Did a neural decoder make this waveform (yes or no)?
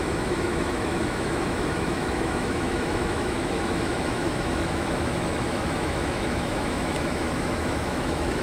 yes